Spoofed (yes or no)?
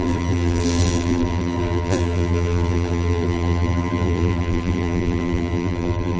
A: yes